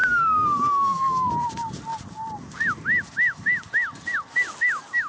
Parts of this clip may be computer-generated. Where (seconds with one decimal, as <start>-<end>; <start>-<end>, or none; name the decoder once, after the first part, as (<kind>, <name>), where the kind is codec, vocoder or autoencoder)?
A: 0.0-1.3 (autoencoder, DAC-VAE)